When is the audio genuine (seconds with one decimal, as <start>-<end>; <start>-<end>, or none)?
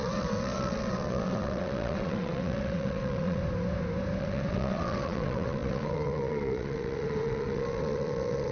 3.4-4.2